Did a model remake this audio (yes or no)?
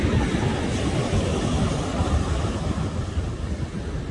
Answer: no